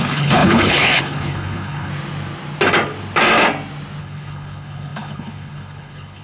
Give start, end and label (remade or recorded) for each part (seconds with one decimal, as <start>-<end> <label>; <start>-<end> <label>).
0.0-1.9 remade; 1.9-4.0 recorded; 4.0-6.2 remade